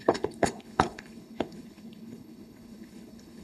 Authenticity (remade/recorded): remade